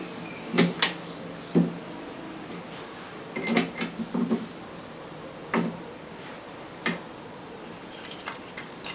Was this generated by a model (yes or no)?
no